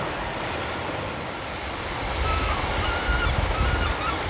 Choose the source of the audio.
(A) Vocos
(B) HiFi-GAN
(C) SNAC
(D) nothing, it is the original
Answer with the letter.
D